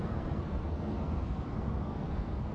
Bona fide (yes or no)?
no